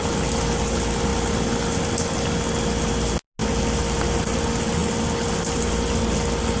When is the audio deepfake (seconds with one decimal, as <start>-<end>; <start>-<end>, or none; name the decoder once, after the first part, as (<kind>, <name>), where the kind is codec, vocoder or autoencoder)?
none